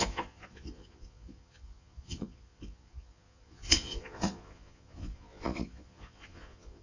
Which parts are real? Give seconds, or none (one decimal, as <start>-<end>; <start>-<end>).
none